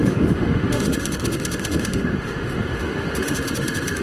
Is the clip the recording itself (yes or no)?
no